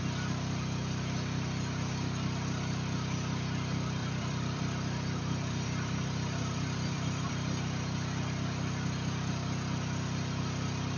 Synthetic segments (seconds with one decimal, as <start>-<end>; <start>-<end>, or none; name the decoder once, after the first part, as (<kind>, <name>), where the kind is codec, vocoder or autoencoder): 4.0-4.6 (vocoder, BigVGAN v2); 5.2-7.3